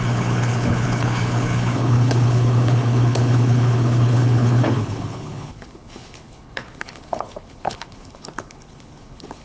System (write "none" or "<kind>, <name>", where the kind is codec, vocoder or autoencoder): codec, HILCodec